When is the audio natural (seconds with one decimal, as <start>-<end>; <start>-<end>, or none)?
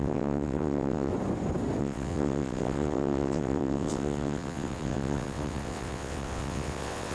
1.1-1.8